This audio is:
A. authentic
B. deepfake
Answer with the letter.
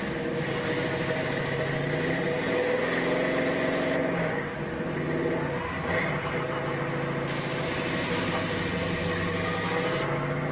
A